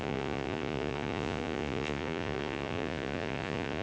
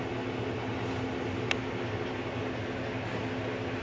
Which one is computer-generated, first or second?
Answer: first